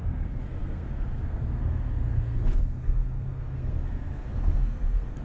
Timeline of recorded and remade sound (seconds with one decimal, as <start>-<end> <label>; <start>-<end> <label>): 0.0-5.2 remade